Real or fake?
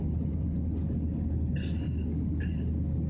real